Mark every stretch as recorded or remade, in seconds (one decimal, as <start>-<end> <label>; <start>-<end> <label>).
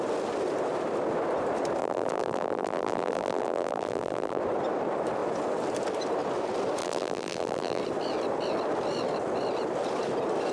0.0-1.8 recorded; 1.8-4.4 remade; 4.4-6.8 recorded; 6.8-7.8 remade; 7.8-10.5 recorded